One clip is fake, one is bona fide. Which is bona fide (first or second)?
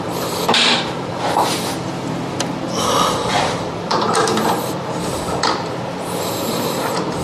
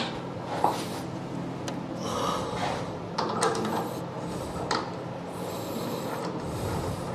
second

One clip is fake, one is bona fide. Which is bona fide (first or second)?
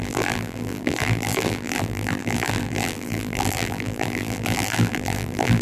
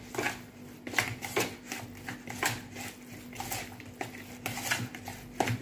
second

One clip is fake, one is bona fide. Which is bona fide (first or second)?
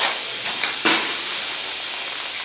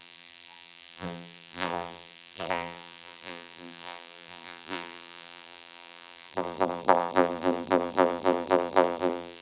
first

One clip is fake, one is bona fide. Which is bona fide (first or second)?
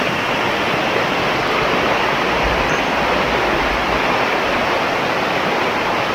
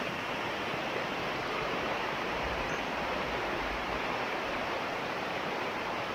first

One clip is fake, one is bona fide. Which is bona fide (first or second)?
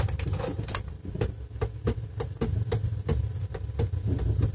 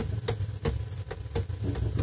second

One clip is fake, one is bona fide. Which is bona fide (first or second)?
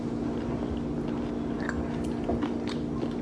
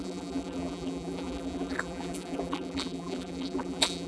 first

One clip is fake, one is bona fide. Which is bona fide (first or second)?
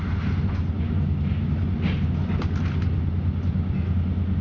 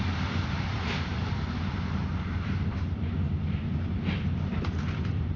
first